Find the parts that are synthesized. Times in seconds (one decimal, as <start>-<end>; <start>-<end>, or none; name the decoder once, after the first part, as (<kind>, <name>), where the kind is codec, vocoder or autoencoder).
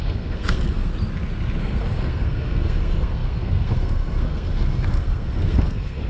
0.0-0.9 (codec, SNAC); 1.6-6.1